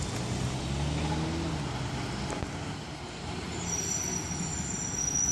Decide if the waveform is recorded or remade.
recorded